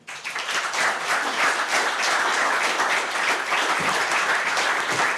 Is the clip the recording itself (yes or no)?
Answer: yes